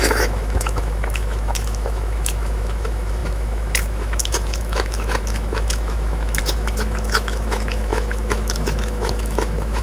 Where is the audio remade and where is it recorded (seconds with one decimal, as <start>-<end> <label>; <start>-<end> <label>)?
0.0-9.8 remade